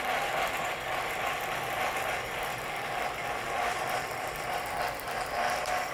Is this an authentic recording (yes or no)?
no